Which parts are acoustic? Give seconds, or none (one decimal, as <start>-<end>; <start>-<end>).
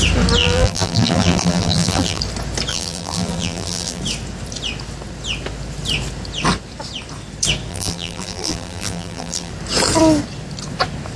0.0-0.4; 2.2-2.7; 4.0-7.7; 9.5-11.2